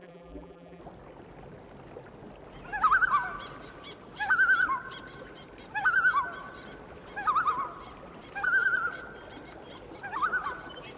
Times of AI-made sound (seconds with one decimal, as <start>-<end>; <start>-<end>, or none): 0.0-0.8